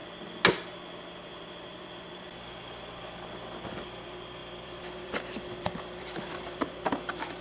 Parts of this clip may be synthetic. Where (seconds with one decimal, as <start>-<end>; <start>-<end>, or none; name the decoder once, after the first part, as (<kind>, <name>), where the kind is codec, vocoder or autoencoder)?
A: 1.3-2.6 (vocoder, BigVGAN v2); 4.4-7.4

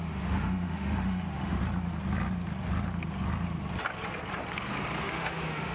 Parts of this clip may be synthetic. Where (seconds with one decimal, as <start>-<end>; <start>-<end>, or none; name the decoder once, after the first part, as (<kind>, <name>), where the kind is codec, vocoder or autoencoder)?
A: 0.0-1.6 (autoencoder, DAC-VAE); 5.0-5.7

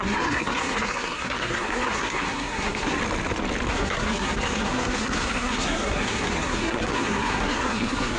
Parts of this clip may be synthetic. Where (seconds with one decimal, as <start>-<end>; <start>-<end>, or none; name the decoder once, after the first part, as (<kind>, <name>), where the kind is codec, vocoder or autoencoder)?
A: 0.0-3.0 (codec, SNAC); 3.7-8.2

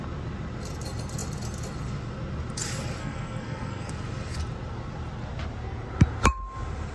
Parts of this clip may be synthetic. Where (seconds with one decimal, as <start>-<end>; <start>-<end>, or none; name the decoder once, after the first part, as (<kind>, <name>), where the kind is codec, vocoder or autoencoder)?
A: 3.0-3.9 (codec, SNAC)

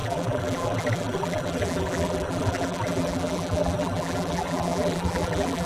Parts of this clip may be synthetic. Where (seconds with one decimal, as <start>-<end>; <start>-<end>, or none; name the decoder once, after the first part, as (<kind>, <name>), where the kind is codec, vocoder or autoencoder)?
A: 0.0-5.7 (vocoder, BigVGAN v2)